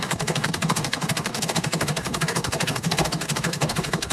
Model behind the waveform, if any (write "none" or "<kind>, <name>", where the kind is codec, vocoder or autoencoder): codec, DAC